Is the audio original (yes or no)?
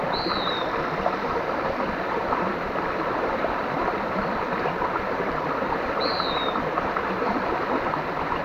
no